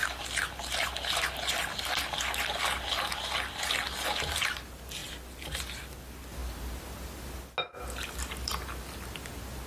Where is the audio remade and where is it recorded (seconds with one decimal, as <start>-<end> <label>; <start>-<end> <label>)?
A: 0.0-2.9 remade; 2.9-9.7 recorded